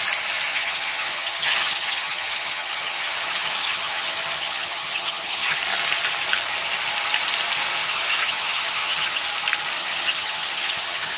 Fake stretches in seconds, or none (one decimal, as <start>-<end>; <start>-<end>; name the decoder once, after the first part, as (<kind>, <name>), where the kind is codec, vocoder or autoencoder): 0.5-5.6 (vocoder, HiFi-GAN); 7.8-9.2; 9.8-11.2